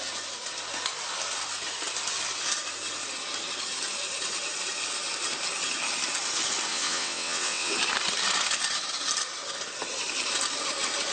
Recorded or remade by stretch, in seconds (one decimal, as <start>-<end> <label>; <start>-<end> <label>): 0.0-6.7 recorded; 6.7-7.7 remade; 7.7-11.1 recorded